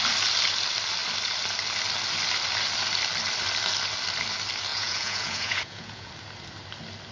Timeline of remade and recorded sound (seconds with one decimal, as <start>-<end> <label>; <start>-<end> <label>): 0.0-4.7 recorded; 4.7-6.1 remade; 6.1-7.1 recorded